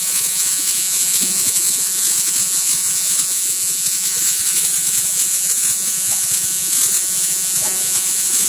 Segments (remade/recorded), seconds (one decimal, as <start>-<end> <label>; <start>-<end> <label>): 0.0-8.5 remade